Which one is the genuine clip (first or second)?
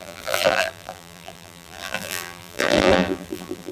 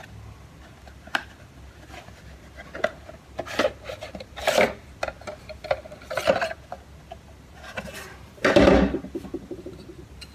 second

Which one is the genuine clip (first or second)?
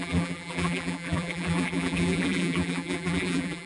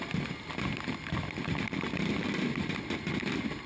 second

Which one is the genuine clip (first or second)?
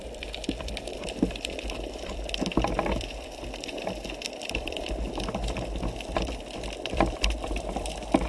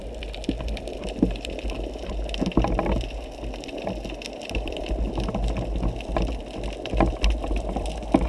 second